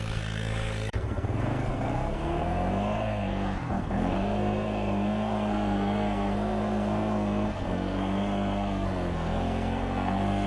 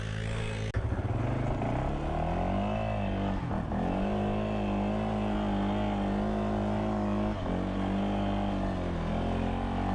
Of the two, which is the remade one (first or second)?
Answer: first